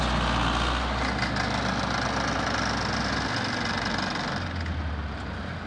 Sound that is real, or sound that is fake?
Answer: real